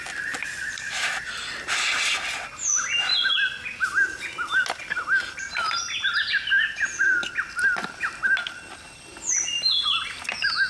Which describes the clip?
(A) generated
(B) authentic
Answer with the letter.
B